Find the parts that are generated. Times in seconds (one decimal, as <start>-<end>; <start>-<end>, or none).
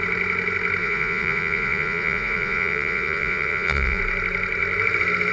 0.8-4.0